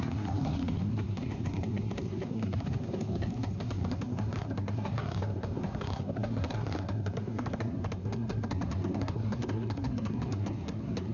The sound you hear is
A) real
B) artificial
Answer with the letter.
B